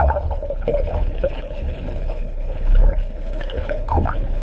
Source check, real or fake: fake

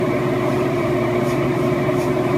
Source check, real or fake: fake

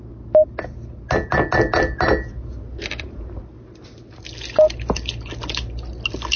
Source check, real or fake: real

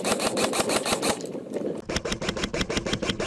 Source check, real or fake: real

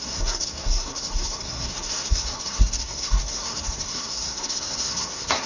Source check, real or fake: fake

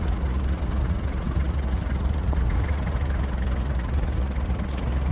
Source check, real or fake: fake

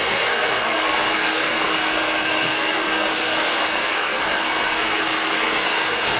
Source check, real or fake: fake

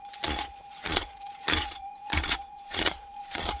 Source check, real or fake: fake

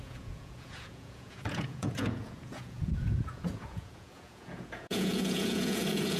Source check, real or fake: fake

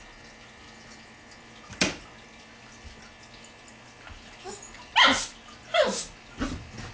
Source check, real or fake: real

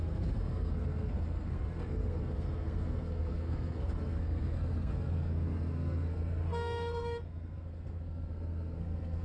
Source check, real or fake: fake